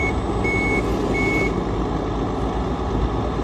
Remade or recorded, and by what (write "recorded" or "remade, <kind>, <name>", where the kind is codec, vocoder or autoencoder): recorded